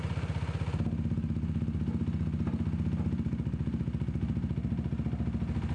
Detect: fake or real real